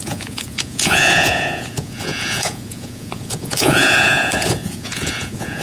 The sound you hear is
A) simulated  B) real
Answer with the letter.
A